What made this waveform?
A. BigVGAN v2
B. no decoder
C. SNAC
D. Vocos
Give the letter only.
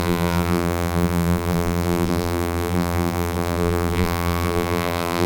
A